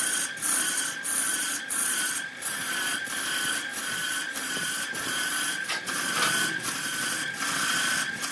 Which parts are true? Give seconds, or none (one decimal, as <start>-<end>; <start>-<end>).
0.0-1.3; 2.8-3.7; 7.1-8.3